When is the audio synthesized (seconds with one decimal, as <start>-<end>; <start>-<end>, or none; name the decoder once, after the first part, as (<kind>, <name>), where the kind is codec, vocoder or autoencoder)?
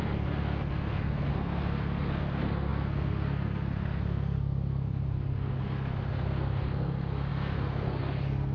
0.0-8.5 (codec, SNAC)